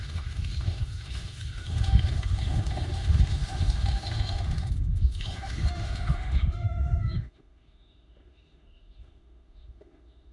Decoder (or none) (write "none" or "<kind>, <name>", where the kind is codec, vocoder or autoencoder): autoencoder, DAC-VAE